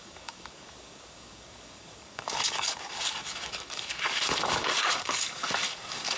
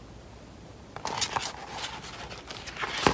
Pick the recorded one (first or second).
second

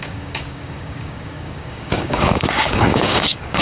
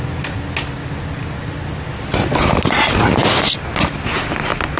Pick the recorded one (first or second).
second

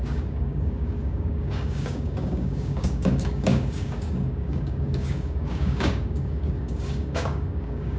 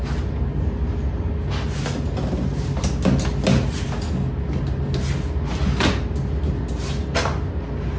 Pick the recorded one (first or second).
second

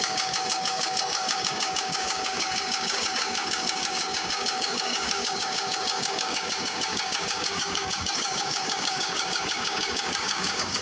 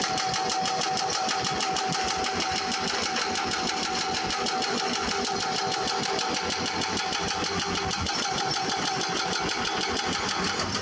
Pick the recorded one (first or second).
second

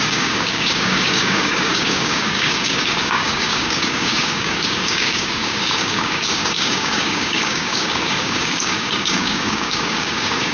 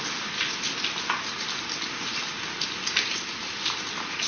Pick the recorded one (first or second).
second